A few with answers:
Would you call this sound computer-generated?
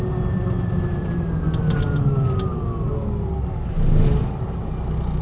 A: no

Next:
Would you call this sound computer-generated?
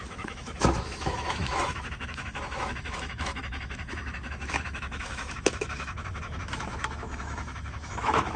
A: yes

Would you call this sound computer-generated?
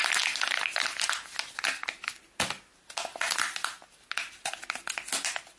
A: no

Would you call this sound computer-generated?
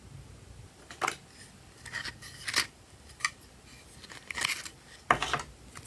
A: no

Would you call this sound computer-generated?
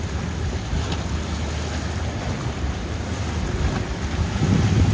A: no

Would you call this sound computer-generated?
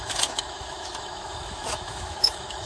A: yes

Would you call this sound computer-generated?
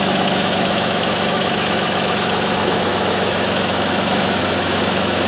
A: yes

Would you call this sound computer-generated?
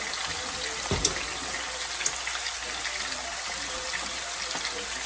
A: no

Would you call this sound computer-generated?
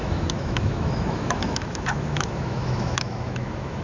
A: yes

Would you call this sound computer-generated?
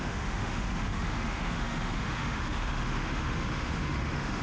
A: yes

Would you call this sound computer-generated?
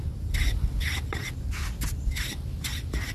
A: no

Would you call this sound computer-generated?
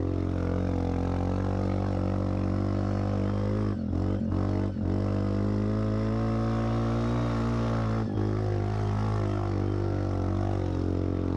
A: no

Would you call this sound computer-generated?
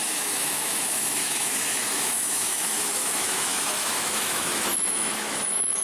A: yes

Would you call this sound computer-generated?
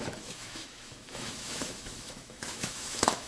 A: yes